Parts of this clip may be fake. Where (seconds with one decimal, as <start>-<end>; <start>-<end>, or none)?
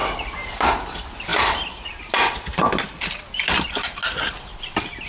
0.0-0.7